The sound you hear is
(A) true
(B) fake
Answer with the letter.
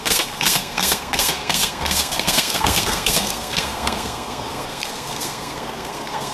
B